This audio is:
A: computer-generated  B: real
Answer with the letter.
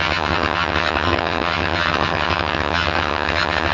A